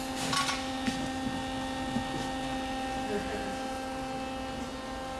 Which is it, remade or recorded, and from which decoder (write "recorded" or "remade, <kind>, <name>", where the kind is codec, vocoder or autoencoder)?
recorded